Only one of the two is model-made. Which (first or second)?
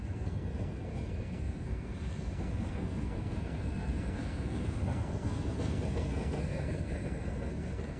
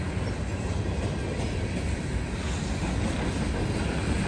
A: first